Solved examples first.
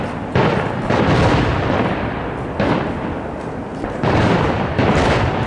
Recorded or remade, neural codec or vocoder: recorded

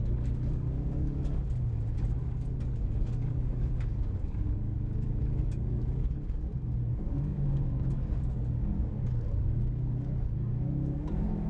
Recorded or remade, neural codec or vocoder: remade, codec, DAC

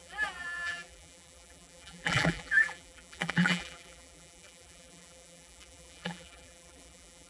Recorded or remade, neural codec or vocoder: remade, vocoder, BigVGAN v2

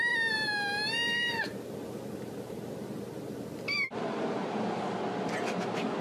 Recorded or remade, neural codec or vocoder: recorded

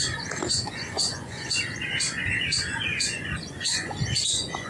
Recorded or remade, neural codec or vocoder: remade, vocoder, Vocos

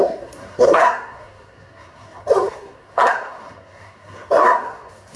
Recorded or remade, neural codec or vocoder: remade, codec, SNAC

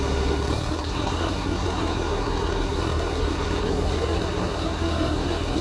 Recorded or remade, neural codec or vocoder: remade, codec, SNAC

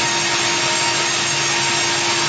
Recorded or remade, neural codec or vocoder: recorded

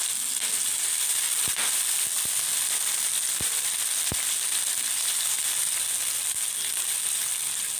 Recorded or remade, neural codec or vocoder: recorded